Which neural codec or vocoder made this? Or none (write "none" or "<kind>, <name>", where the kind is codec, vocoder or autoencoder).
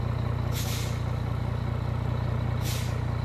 none